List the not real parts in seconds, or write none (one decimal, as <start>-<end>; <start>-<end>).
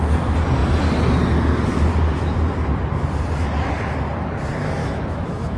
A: 4.8-5.6